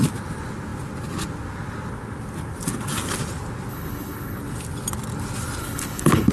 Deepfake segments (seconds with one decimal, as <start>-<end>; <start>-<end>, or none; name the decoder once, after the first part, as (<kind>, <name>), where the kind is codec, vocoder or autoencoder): 3.7-4.4 (codec, HILCodec); 5.6-6.3